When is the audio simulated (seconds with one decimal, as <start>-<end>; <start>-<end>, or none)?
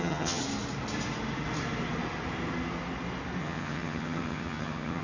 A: 0.0-0.4; 3.4-5.0